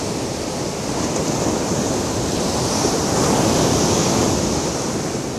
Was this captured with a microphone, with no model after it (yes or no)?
yes